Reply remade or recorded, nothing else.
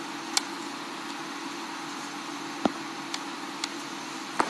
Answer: recorded